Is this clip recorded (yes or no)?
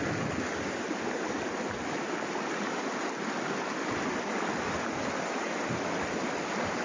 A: yes